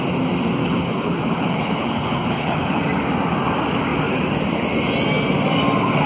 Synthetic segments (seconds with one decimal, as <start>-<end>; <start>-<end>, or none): 0.6-2.8